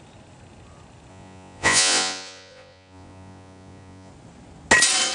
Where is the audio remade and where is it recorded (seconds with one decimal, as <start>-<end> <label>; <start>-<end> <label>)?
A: 0.0-1.1 recorded; 1.1-4.1 remade; 4.1-5.1 recorded